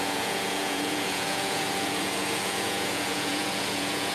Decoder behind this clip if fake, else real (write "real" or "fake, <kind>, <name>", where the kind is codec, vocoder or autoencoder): fake, vocoder, Vocos